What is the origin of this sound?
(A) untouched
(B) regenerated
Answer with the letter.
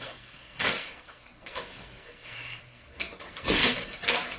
B